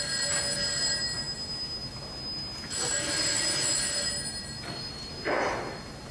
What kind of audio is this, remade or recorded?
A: recorded